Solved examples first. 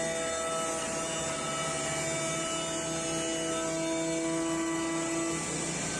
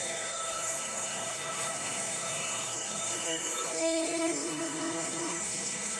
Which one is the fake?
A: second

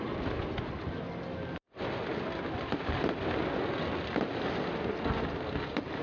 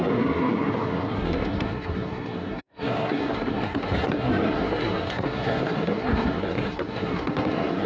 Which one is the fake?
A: second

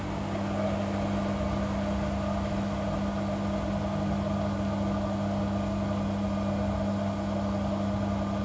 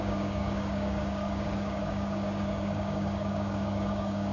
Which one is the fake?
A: second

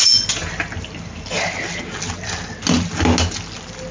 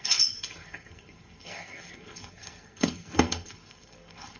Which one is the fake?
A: second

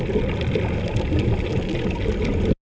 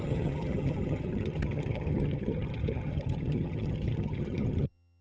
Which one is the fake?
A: second